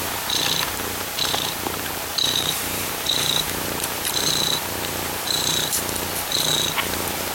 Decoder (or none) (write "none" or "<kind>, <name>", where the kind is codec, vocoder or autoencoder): vocoder, BigVGAN v2